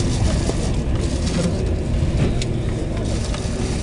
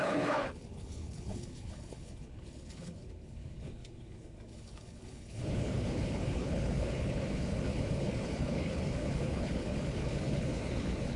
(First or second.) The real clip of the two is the first